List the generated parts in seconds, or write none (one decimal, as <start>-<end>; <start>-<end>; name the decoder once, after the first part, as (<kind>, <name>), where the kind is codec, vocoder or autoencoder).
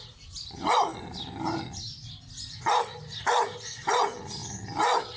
none